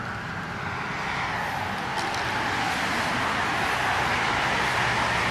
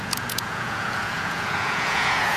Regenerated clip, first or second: second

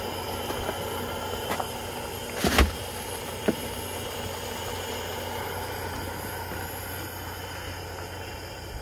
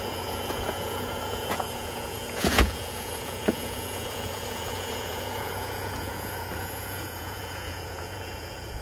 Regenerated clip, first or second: second